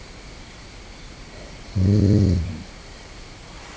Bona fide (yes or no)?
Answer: yes